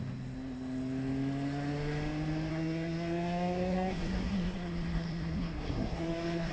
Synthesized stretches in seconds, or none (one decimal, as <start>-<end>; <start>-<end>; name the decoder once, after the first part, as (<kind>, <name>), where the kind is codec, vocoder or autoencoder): 2.5-6.5 (codec, SNAC)